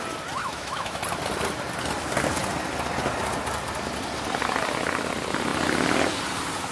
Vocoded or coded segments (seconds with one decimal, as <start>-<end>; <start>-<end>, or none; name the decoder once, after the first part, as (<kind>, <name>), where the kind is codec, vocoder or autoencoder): 0.4-1.0 (autoencoder, DAC-VAE)